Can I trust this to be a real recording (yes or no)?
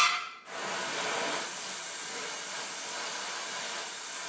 yes